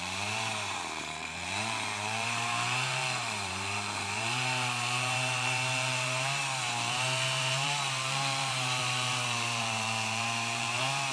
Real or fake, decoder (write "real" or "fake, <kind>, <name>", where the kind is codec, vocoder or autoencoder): fake, vocoder, BigVGAN v2